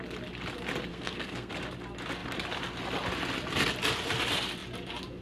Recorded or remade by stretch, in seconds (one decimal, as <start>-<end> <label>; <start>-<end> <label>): 0.0-0.9 recorded; 0.9-1.5 remade; 1.5-5.2 recorded